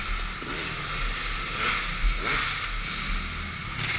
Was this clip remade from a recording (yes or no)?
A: no